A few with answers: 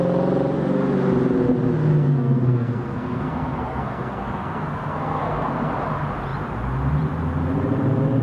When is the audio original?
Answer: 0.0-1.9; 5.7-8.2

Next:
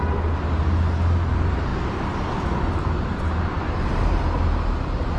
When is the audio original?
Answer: 0.0-5.2

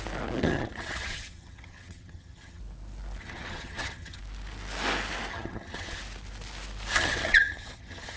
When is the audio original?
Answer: 0.0-0.4; 2.6-3.2; 4.2-5.3; 6.0-6.9

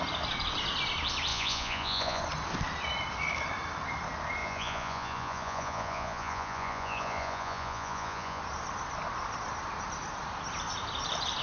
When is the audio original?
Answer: 0.0-1.3; 2.2-4.4; 8.4-11.4